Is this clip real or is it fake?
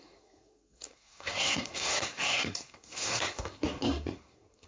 fake